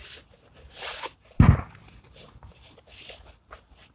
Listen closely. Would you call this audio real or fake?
real